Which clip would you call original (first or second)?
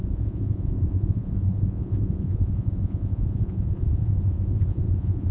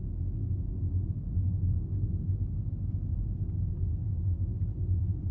second